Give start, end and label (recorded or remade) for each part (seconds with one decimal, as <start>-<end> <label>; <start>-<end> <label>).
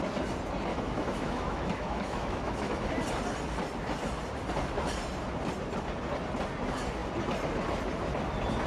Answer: 0.0-0.7 recorded; 0.7-2.9 remade; 2.9-8.7 recorded